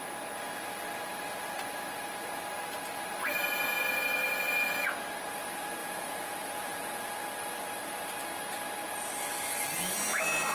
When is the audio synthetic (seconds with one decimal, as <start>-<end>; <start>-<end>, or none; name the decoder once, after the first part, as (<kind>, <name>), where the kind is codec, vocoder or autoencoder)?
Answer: 5.8-7.1 (vocoder, Vocos)